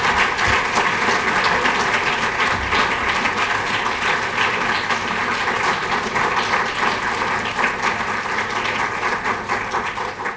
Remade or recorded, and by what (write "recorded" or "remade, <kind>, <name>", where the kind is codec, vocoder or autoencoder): recorded